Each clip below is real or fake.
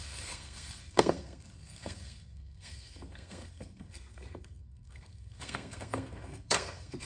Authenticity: fake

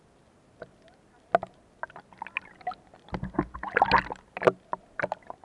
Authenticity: real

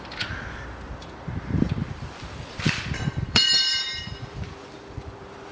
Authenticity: fake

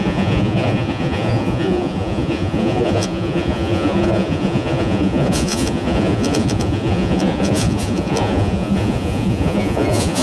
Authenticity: fake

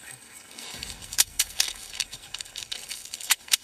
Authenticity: fake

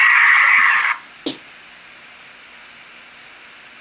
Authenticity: real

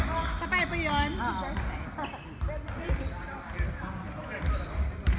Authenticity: real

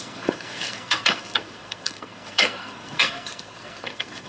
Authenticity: fake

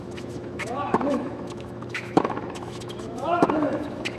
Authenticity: fake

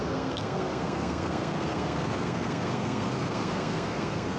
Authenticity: fake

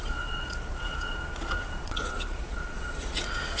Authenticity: fake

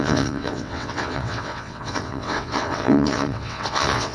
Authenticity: fake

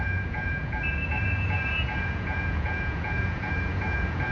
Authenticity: fake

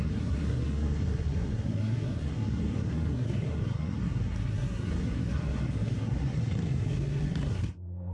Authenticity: fake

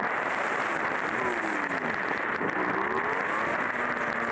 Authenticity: real